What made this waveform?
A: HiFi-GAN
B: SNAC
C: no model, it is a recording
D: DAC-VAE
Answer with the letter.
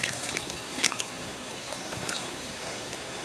B